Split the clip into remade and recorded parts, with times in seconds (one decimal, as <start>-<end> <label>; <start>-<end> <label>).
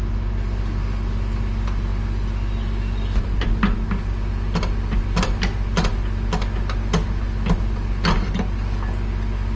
0.0-9.6 recorded